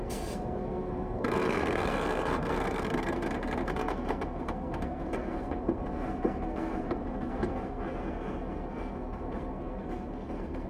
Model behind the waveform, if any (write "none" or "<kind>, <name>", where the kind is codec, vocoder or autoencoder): codec, SNAC